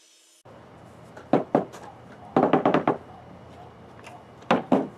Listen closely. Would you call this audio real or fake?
real